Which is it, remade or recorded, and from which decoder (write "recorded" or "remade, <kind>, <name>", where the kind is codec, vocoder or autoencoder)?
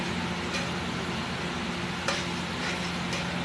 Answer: recorded